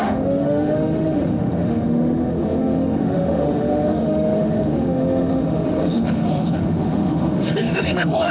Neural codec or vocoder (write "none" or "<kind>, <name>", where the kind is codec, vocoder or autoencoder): autoencoder, DAC-VAE